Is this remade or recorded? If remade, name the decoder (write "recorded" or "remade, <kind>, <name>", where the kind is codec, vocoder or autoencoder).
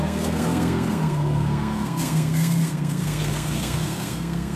remade, codec, SNAC